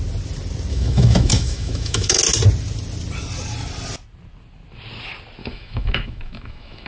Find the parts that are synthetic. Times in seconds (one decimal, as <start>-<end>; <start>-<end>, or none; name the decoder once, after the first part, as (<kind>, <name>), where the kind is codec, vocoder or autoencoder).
0.7-2.2 (autoencoder, DAC-VAE); 5.4-6.9